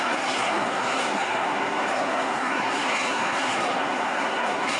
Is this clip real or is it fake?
fake